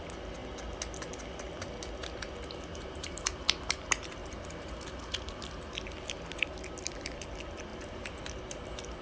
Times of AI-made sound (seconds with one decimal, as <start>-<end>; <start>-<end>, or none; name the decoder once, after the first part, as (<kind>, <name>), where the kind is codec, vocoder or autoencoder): 2.7-3.6 (vocoder, BigVGAN v2); 4.2-5.4; 7.7-8.2